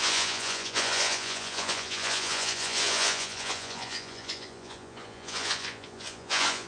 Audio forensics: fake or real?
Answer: fake